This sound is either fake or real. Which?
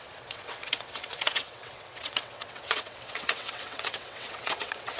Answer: fake